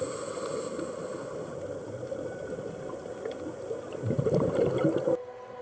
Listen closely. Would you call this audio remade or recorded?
recorded